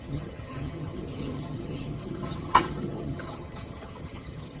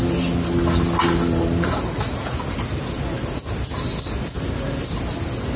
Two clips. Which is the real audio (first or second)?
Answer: second